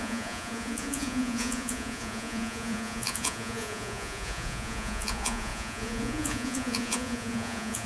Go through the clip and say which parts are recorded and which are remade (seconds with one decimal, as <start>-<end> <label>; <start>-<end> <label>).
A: 0.0-7.9 remade

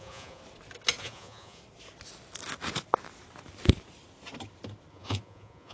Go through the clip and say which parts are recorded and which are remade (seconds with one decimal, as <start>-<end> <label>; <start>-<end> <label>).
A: 0.0-0.4 remade; 0.4-1.0 recorded; 1.0-1.6 remade; 1.6-4.9 recorded; 4.9-5.7 remade

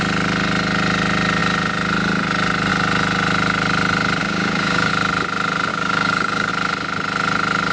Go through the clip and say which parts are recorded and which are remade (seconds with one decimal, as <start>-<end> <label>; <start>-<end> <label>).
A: 0.0-4.2 recorded; 4.2-4.9 remade; 4.9-5.7 recorded; 5.7-6.5 remade; 6.5-7.7 recorded

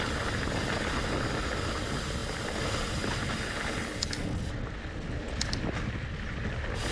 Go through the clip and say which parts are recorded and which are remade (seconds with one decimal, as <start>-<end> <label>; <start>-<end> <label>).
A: 0.0-6.9 recorded

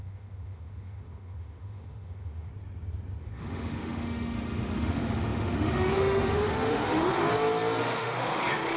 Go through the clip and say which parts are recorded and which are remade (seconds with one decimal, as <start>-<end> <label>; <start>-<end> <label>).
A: 0.0-2.5 remade; 2.5-3.2 recorded; 3.2-7.2 remade; 7.2-7.8 recorded; 7.8-8.8 remade